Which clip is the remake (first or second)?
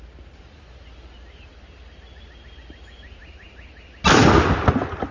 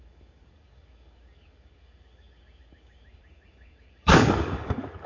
second